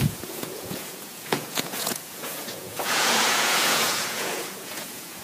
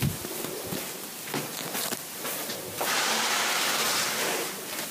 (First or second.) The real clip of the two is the second